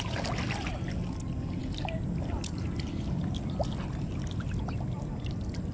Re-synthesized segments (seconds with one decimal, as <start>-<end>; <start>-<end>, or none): none